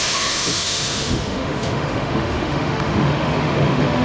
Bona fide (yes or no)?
no